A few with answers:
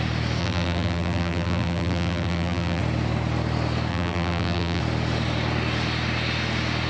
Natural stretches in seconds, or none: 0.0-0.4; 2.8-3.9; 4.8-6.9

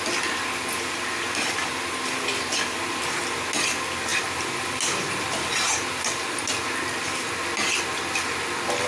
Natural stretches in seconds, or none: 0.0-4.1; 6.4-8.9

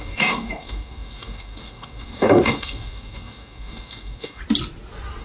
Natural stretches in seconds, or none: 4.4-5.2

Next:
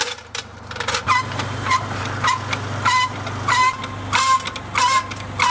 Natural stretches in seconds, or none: 2.0-5.5